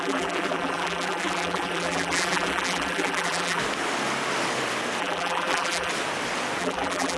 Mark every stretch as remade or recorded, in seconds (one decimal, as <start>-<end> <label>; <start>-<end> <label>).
0.0-3.6 remade; 3.6-5.0 recorded; 5.0-5.9 remade; 5.9-6.6 recorded; 6.6-7.2 remade